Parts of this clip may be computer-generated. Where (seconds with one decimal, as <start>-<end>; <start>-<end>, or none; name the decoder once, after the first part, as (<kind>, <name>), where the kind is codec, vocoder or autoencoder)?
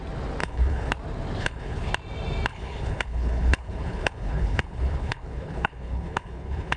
0.4-0.9 (codec, HILCodec); 1.4-1.9; 2.5-6.8